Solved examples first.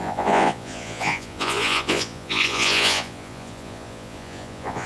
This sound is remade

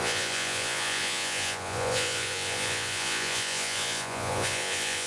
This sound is remade